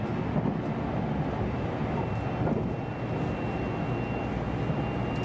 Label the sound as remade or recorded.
recorded